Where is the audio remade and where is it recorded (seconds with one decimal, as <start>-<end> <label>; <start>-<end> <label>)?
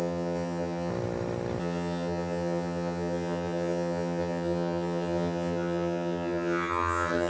0.0-0.9 remade; 0.9-1.6 recorded; 1.6-7.3 remade